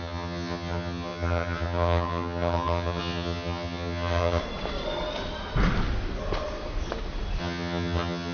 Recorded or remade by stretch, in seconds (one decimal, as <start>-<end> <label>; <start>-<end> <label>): 0.0-4.4 remade; 4.4-7.4 recorded; 7.4-8.3 remade